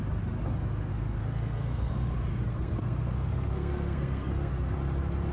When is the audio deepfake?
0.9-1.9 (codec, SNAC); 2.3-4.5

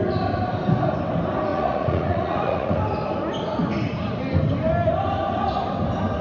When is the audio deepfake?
1.5-2.8 (vocoder, Vocos)

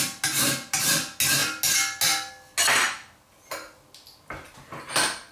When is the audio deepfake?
none

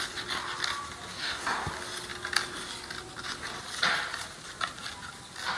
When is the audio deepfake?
1.1-1.7 (codec, SNAC)

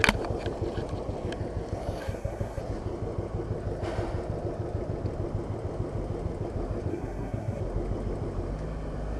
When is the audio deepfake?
2.0-2.6 (codec, SNAC); 6.9-7.6